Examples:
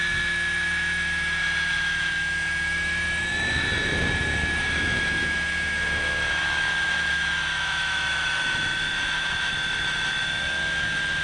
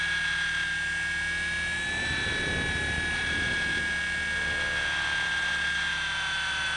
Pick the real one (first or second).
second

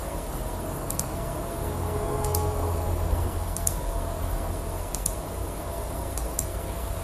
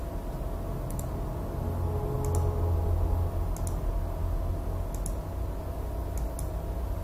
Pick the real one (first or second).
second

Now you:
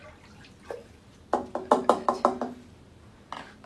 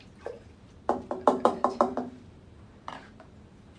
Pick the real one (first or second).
first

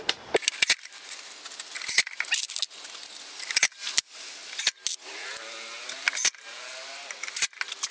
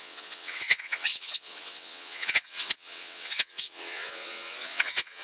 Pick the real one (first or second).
first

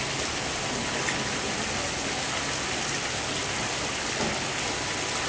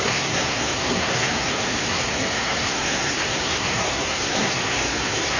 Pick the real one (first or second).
first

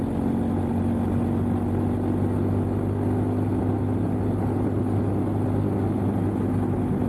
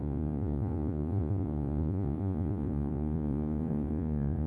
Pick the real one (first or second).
first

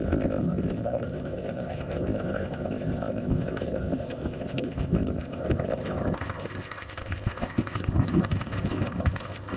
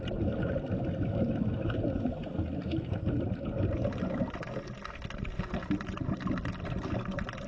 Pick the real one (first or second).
second